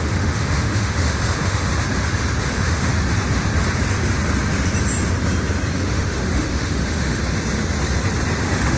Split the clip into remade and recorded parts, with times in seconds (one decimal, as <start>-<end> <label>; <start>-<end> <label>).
0.0-1.7 remade; 1.7-2.5 recorded; 2.5-2.9 remade; 2.9-5.8 recorded; 5.8-7.2 remade; 7.2-8.4 recorded; 8.4-8.8 remade

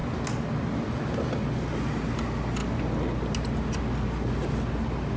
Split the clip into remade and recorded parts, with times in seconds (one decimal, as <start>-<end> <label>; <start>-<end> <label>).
0.0-5.2 recorded

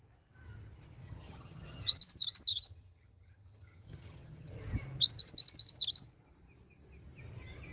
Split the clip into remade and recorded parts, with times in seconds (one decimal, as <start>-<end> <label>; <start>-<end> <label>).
0.0-1.0 recorded; 1.0-2.0 remade; 2.0-2.5 recorded; 2.5-4.5 remade; 4.5-7.7 recorded

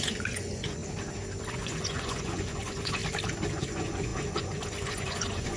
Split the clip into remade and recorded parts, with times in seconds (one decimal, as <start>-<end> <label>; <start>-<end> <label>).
0.0-0.8 remade; 0.8-1.5 recorded; 1.5-3.0 remade; 3.0-3.5 recorded; 3.5-5.6 remade

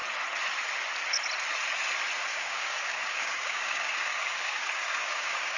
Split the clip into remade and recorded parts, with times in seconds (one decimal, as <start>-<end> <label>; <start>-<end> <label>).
0.0-2.3 recorded; 2.3-5.6 remade